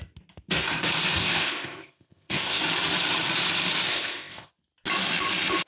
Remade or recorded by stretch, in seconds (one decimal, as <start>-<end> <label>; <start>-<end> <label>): 0.0-1.2 recorded; 1.2-2.6 remade; 2.6-3.9 recorded; 3.9-4.5 remade; 4.5-5.7 recorded